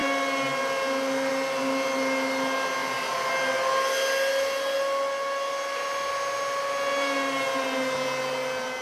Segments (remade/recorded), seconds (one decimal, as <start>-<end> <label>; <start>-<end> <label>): 0.0-2.8 recorded; 2.8-3.3 remade; 3.3-8.8 recorded